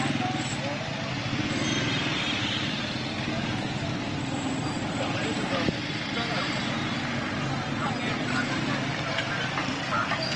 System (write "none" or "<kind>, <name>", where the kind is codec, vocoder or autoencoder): none